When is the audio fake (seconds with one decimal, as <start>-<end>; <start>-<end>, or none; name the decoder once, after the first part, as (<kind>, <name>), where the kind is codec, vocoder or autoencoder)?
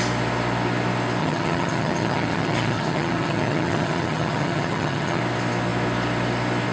1.2-5.2 (vocoder, HiFi-GAN)